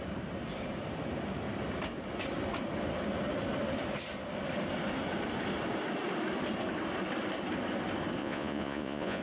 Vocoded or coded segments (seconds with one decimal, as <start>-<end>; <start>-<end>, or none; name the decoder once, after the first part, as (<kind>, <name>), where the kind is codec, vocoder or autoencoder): 8.2-9.2 (vocoder, Vocos)